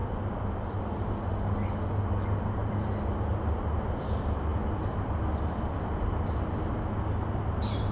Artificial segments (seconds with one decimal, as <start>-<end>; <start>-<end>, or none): none

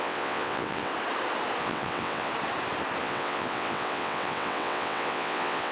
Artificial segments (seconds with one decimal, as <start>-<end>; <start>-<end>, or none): 0.0-0.9; 1.6-2.3; 3.0-5.7

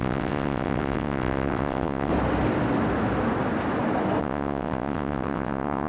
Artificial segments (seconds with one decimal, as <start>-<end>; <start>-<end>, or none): 0.0-2.1; 4.2-5.9

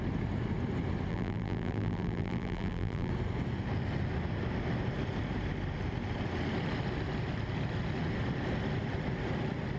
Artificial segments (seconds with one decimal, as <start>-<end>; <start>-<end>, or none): 1.1-3.1